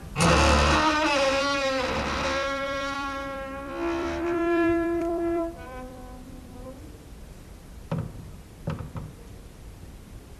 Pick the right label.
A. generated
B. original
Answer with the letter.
A